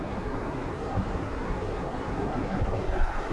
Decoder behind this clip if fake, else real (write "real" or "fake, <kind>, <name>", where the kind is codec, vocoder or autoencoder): fake, codec, SNAC